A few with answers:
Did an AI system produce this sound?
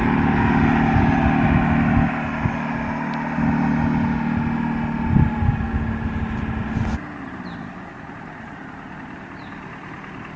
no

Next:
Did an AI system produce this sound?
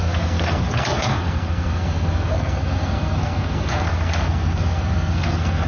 yes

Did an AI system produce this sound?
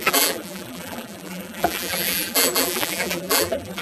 yes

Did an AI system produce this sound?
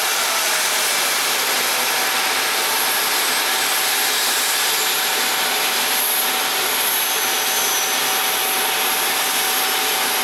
no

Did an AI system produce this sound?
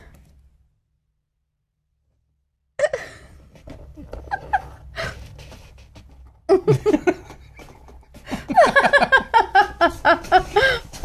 no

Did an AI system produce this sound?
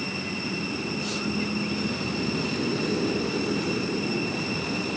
no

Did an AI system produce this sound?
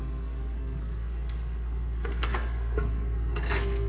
yes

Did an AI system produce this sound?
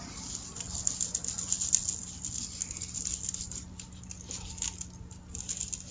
no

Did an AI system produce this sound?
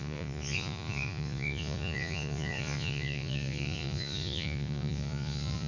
yes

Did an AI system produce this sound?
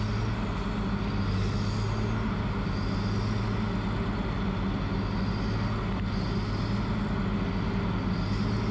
no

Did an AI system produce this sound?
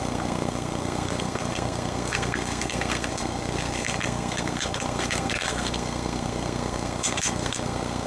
yes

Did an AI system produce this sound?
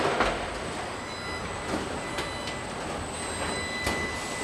no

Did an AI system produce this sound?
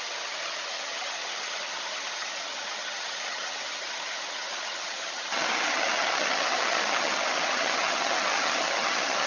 yes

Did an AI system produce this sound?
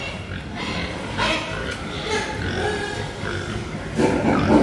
no